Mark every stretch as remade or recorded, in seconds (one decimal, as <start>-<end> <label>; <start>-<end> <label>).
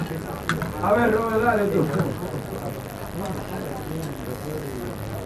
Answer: 0.0-4.3 recorded; 4.3-4.8 remade; 4.8-5.3 recorded